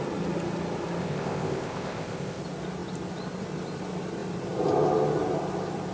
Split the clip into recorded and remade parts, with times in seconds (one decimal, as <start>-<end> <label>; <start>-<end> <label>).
0.0-1.0 recorded; 1.0-2.4 remade; 2.4-5.9 recorded